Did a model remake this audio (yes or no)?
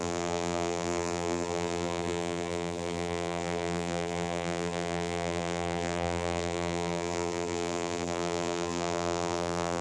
yes